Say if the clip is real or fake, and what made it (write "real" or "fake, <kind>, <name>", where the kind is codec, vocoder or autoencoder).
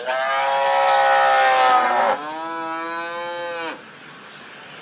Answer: real